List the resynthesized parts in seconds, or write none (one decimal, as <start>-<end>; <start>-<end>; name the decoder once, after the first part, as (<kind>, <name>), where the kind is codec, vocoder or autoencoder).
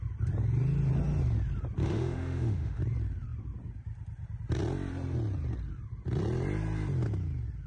1.8-2.8 (autoencoder, DAC-VAE)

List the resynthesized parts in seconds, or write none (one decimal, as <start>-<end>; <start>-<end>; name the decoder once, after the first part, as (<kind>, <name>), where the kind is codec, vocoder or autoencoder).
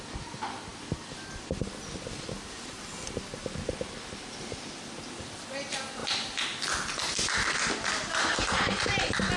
8.2-8.8 (autoencoder, DAC-VAE)